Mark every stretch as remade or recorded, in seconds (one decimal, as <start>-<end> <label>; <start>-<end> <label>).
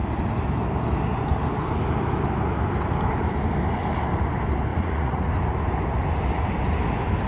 0.0-4.7 recorded; 4.7-5.3 remade; 5.3-7.3 recorded